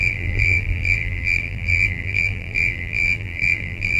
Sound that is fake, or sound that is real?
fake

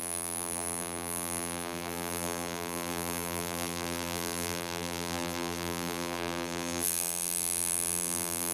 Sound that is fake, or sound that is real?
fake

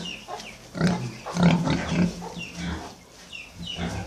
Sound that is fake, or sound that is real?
real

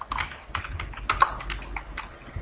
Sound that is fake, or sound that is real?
real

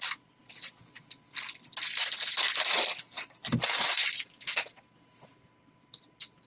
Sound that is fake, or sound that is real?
real